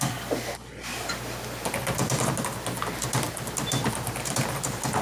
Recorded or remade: recorded